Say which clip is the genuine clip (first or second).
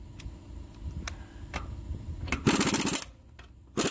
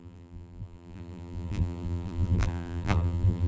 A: first